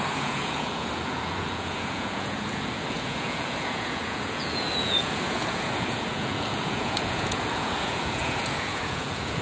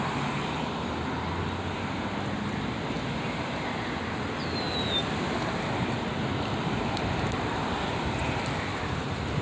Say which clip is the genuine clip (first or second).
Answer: second